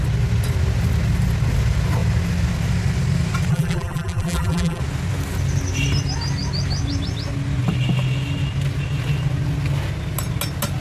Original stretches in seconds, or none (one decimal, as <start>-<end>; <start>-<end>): 0.0-3.5; 4.8-10.8